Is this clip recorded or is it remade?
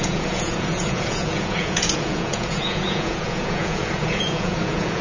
remade